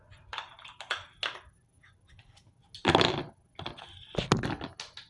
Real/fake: real